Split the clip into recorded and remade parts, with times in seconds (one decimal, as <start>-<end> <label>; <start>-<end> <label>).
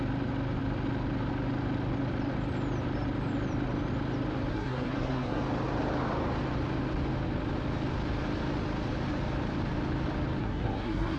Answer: 0.0-4.5 recorded; 4.5-5.4 remade; 5.4-10.4 recorded; 10.4-11.2 remade